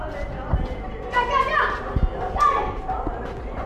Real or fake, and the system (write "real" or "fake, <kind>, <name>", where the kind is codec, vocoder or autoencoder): real